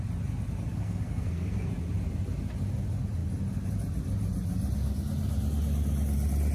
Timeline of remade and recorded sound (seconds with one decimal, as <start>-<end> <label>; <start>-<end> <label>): 0.0-0.7 recorded; 0.7-1.7 remade; 1.7-6.5 recorded